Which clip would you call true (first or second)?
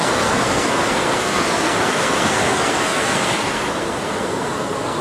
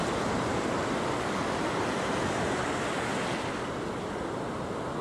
second